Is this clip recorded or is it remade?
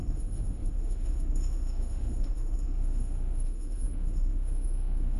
remade